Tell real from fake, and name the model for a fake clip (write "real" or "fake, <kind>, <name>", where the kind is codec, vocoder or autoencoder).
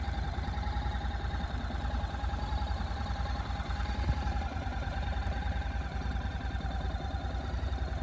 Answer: fake, vocoder, BigVGAN v2